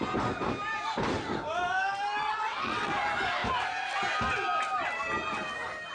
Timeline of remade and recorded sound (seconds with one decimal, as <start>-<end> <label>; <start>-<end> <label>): 0.0-2.2 recorded; 2.2-2.9 remade; 2.9-5.9 recorded